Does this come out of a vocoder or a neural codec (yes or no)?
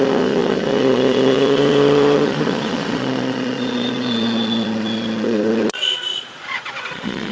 yes